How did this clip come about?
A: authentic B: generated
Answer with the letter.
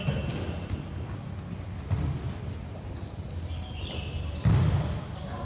A